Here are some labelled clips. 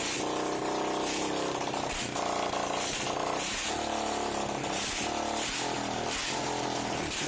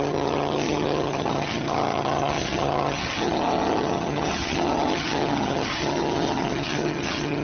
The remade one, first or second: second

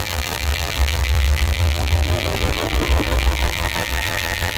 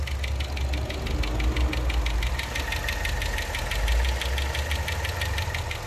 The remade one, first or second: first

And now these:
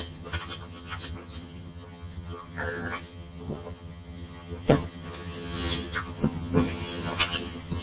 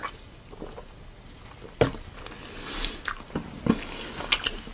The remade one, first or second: first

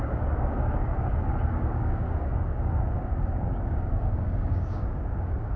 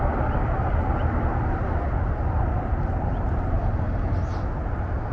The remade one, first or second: first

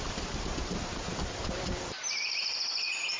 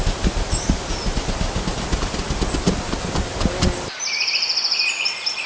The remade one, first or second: first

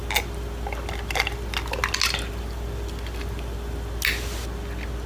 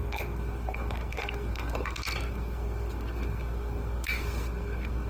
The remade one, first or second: second